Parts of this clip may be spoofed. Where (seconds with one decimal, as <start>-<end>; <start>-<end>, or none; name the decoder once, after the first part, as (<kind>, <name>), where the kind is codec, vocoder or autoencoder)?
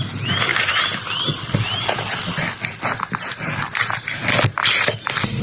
0.5-3.0 (vocoder, BigVGAN v2)